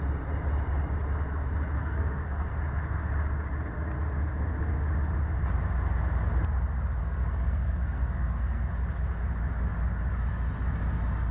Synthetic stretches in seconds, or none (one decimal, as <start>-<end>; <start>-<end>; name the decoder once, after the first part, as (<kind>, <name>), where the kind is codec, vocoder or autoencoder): 1.8-2.6 (codec, SNAC); 7.0-8.7